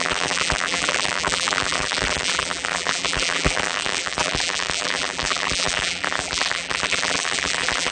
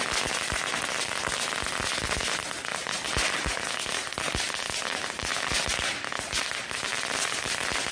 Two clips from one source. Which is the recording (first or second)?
second